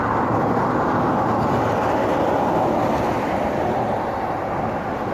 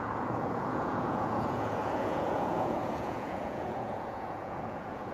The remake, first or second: second